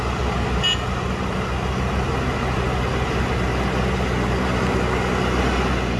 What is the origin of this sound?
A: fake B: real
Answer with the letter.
B